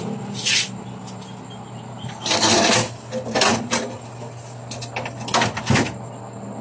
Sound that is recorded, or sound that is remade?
recorded